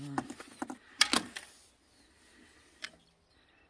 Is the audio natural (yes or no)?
yes